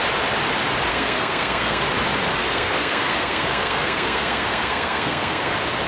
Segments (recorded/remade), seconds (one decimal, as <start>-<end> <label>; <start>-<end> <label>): 0.0-0.9 recorded; 0.9-1.8 remade; 1.8-2.4 recorded; 2.4-5.5 remade; 5.5-5.9 recorded